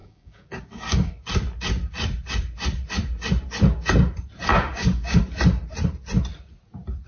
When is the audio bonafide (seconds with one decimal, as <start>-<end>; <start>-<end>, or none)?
1.1-4.5; 5.2-7.1